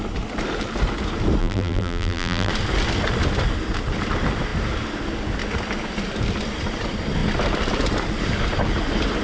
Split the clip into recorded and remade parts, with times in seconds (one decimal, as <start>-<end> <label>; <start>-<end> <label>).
0.0-1.4 recorded; 1.4-2.5 remade; 2.5-9.2 recorded